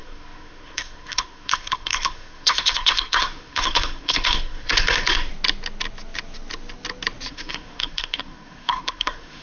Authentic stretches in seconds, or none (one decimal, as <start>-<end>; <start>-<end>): 5.3-7.3